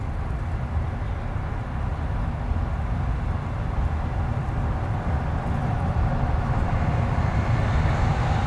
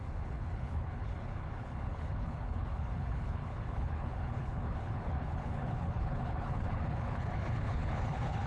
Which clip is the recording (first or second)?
first